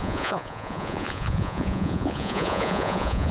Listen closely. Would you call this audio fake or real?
fake